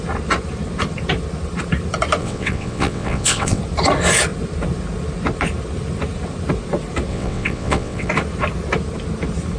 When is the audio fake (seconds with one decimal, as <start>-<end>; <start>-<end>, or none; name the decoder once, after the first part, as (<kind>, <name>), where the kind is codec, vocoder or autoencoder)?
2.2-3.6 (vocoder, WaveNeXt); 7.1-8.1